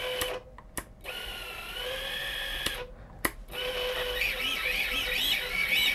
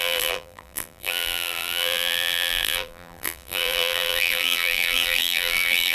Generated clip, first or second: second